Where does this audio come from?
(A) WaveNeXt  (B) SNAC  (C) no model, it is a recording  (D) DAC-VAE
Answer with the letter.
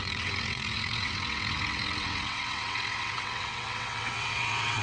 A